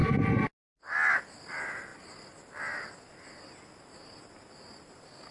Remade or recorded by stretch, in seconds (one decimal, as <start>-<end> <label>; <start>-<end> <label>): 0.0-5.3 recorded